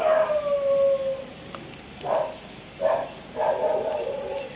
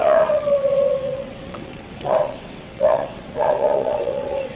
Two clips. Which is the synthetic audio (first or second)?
second